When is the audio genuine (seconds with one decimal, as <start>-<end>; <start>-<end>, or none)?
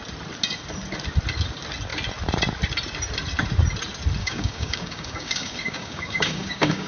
0.0-4.2